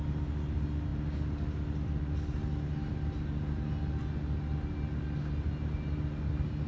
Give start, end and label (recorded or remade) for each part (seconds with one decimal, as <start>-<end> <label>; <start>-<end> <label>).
0.0-6.7 recorded